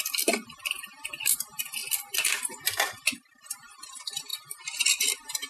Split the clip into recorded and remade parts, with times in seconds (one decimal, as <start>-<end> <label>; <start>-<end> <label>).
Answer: 0.0-5.5 remade